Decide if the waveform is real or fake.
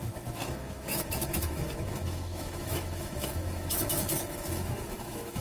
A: fake